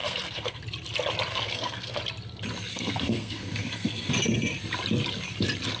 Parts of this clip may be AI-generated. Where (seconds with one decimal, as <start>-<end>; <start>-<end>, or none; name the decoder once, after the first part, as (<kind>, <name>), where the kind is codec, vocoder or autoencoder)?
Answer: 0.0-0.6 (codec, SNAC); 1.3-2.0; 2.7-4.1